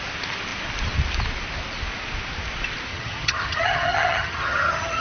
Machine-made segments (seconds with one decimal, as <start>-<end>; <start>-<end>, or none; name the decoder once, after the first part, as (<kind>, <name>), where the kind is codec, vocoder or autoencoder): 2.9-5.0 (vocoder, HiFi-GAN)